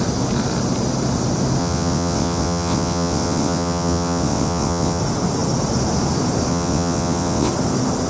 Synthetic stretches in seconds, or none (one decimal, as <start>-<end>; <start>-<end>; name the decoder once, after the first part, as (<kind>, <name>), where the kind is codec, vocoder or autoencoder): 1.6-5.0 (vocoder, WaveNeXt); 6.5-7.5